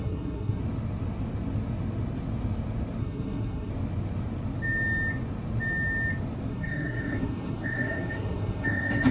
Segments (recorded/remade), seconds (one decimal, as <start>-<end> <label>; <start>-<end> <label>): 0.0-0.6 remade; 0.6-3.0 recorded; 3.0-3.7 remade; 3.7-6.5 recorded; 6.5-9.1 remade